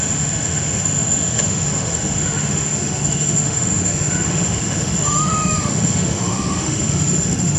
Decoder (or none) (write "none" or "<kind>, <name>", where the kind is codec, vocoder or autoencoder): autoencoder, DAC-VAE